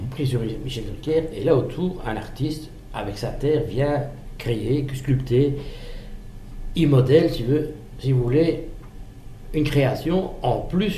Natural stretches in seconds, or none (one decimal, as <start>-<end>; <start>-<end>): 0.0-11.0